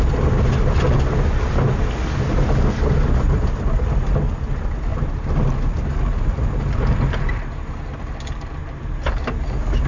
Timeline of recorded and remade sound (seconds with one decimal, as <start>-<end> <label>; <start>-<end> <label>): 0.0-8.6 recorded; 8.6-9.4 remade; 9.4-9.9 recorded